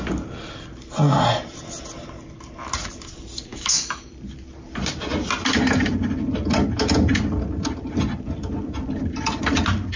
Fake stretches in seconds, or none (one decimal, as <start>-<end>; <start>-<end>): 3.5-4.1